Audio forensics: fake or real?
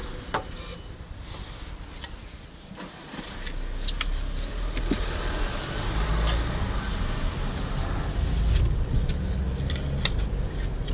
real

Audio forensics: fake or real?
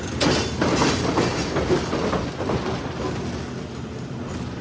real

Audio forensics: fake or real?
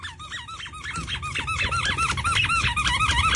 real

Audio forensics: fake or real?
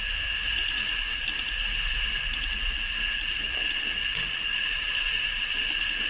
real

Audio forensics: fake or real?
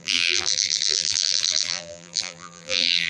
fake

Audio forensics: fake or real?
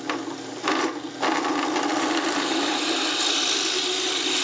real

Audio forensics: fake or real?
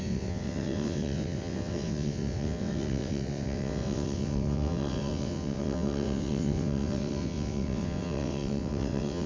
fake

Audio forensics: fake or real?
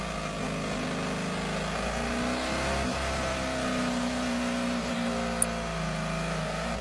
real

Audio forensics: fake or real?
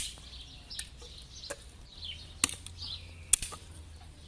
real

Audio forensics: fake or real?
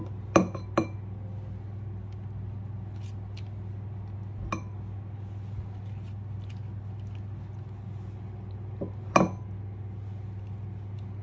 real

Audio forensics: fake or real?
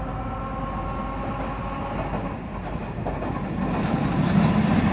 real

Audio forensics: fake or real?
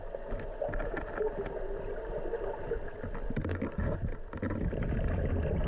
real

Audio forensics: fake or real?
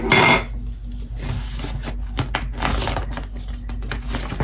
real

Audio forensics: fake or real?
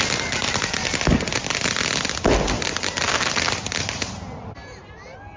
real